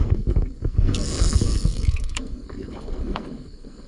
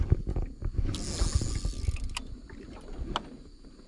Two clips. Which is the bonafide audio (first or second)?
second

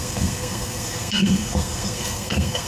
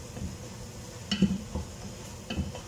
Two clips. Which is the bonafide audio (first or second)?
second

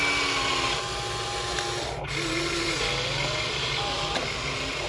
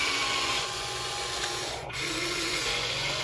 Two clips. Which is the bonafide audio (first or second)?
first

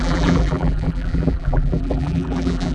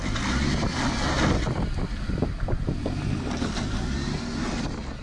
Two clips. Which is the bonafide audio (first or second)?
second